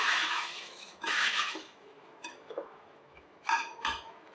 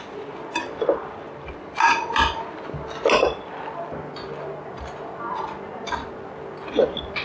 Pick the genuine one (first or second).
second